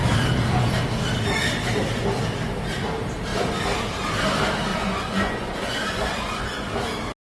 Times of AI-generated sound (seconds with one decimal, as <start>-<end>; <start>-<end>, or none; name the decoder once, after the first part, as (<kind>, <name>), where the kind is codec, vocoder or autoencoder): 4.7-6.7 (vocoder, Vocos)